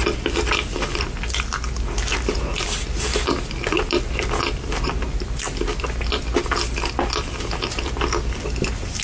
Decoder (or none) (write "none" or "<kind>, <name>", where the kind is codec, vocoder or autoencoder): none